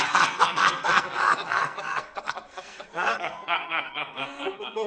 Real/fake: fake